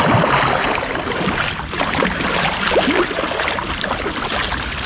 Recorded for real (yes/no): yes